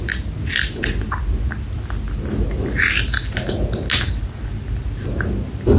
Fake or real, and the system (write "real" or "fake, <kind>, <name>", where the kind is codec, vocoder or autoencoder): real